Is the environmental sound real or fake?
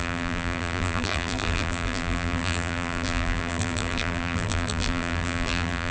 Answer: fake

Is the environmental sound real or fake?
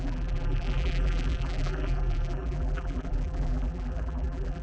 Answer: fake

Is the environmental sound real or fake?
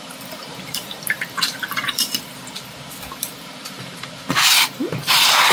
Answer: fake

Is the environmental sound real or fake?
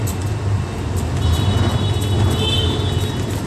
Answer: real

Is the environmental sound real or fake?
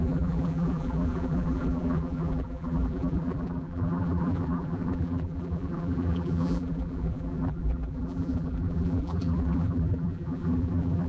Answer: fake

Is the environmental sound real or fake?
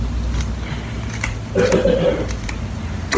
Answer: real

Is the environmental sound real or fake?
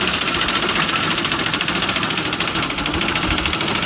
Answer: real